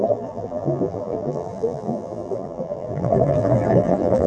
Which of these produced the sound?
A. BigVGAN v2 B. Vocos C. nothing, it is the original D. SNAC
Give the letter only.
A